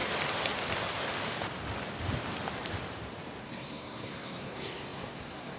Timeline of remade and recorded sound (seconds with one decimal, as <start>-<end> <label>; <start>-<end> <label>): 0.0-3.4 recorded; 3.4-5.6 remade